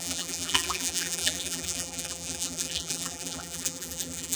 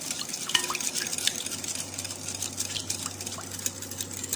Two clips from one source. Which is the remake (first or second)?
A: first